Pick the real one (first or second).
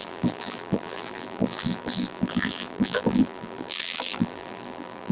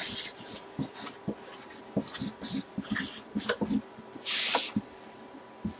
second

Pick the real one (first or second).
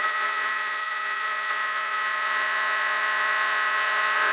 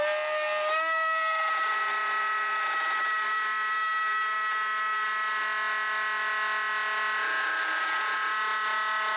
second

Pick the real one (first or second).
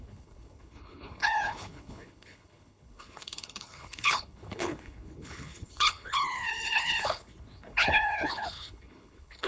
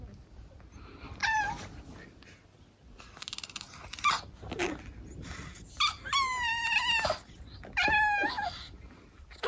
second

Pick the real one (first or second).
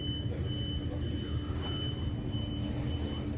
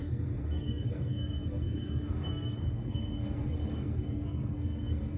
first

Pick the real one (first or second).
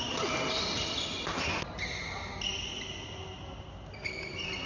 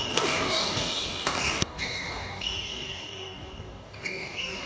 first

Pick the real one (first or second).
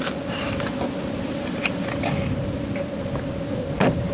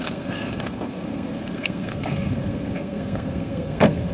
first